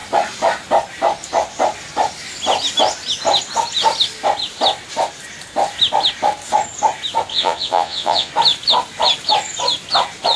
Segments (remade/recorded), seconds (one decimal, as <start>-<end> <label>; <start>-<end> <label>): 0.0-7.3 recorded; 7.3-8.3 remade; 8.3-10.4 recorded